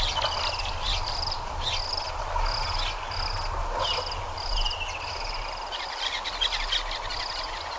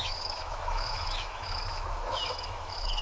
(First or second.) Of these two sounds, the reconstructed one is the second